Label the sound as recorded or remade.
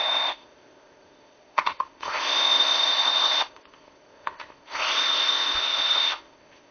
remade